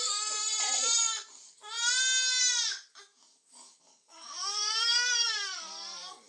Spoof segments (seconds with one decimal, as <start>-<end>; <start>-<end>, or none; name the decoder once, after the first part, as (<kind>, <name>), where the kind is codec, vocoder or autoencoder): 0.0-0.4 (codec, DAC); 1.0-1.6; 2.7-6.3